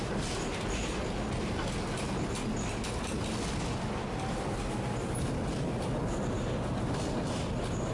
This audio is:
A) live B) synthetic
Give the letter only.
A